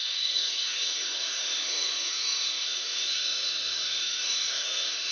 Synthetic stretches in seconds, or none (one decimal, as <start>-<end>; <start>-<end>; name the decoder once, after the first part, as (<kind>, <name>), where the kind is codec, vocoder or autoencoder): 0.0-5.1 (autoencoder, DAC-VAE)